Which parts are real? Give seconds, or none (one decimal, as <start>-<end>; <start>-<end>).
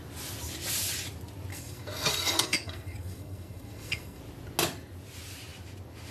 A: 0.0-1.5; 4.2-6.1